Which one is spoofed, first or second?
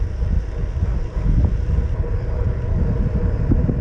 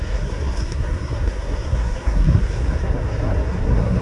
second